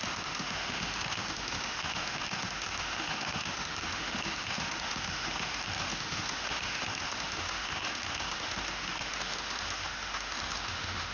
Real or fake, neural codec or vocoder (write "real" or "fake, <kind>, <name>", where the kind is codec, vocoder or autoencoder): fake, autoencoder, DAC-VAE